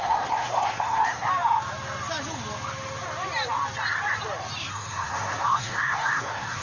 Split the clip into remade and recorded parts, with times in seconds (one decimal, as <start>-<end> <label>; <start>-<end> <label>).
0.0-1.3 remade; 1.3-4.7 recorded; 4.7-6.6 remade